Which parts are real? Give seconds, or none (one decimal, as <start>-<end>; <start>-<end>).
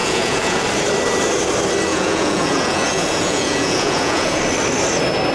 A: 0.6-1.9; 4.4-5.3